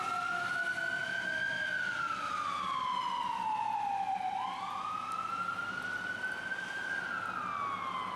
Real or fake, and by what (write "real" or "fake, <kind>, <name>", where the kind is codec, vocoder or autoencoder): real